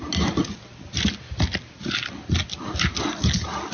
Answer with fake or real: real